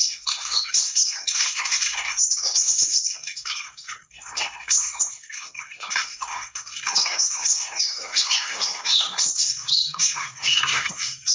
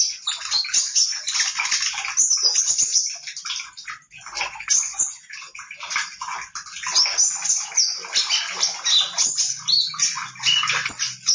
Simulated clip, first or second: first